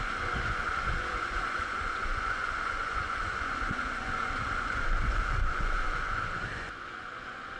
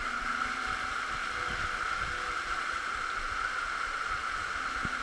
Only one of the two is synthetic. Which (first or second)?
first